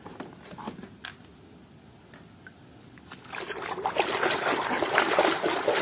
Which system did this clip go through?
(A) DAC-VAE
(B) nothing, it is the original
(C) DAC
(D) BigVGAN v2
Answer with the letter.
B